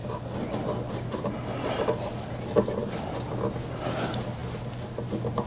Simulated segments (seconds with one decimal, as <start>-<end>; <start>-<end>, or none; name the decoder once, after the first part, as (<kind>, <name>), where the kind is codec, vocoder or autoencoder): none